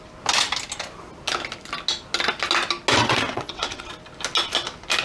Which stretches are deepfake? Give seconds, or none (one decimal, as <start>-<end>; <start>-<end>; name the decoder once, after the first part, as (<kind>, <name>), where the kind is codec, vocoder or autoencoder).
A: 3.0-3.9 (vocoder, WaveNeXt)